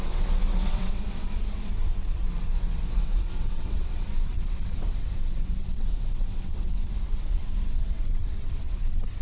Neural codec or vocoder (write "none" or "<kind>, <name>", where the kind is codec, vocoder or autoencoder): vocoder, WaveNeXt